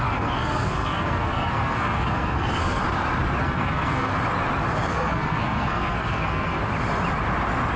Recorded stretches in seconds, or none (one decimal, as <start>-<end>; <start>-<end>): 2.8-3.4; 4.1-4.9; 6.6-7.8